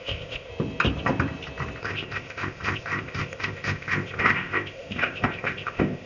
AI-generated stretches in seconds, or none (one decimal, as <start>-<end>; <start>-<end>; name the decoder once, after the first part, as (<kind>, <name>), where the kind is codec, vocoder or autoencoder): 0.0-0.5 (codec, ZipCodec); 1.8-6.1